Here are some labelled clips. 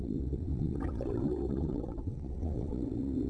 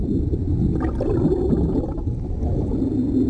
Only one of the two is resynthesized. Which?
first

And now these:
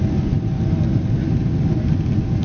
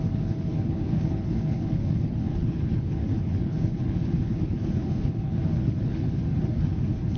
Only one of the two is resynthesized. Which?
second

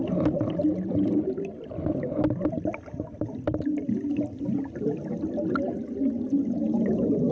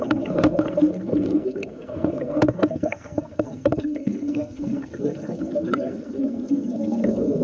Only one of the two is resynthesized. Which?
second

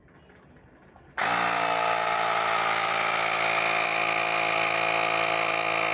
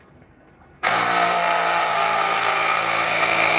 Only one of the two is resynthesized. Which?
second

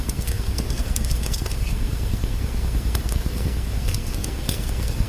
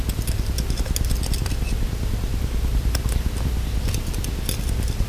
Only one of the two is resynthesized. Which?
first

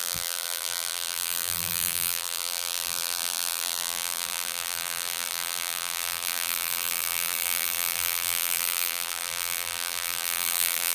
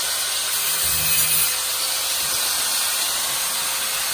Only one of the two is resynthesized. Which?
first